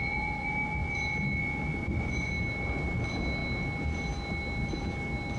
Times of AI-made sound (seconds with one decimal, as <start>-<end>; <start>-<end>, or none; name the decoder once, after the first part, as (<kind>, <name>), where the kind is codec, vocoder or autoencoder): 1.8-2.3 (vocoder, Vocos)